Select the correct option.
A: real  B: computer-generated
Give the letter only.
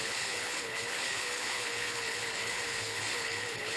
B